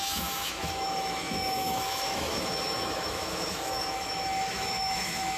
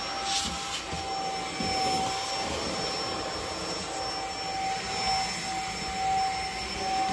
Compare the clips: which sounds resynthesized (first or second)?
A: first